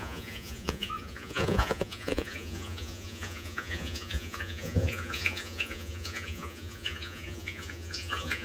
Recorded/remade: remade